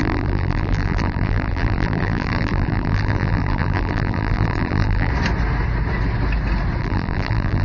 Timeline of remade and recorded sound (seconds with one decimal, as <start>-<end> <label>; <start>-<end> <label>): 0.0-5.1 remade; 5.1-6.8 recorded; 6.8-7.6 remade